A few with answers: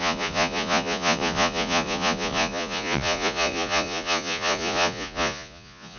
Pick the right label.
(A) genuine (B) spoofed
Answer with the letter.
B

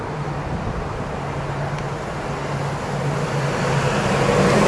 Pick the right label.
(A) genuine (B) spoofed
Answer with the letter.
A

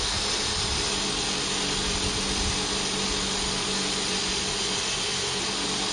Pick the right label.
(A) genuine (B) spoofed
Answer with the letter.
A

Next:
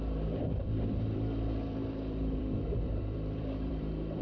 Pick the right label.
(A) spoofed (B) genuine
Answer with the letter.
A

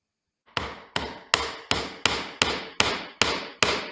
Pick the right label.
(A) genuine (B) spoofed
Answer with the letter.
A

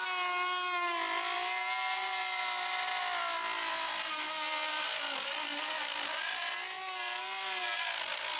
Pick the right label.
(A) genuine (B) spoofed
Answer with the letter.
A